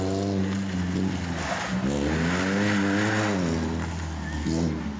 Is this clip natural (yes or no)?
yes